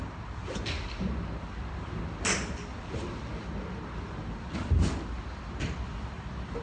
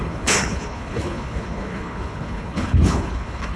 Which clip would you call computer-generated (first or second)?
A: second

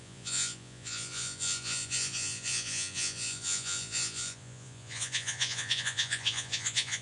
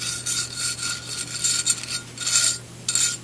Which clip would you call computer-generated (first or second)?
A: first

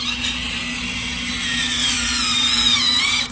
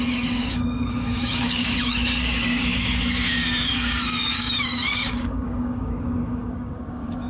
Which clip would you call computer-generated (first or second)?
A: second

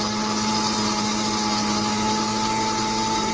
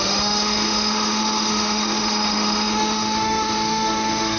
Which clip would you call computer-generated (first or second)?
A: second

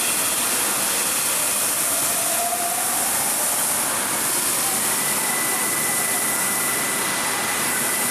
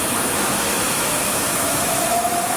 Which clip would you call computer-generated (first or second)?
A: second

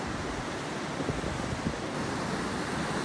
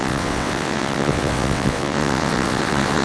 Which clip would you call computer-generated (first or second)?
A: second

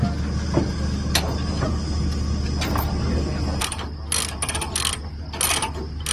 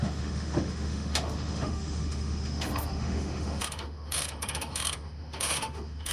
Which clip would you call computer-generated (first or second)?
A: second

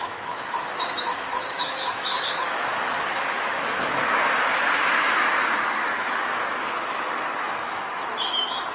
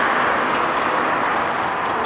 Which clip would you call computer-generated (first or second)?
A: first